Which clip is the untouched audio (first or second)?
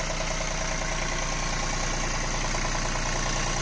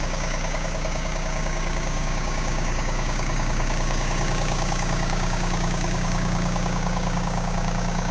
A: first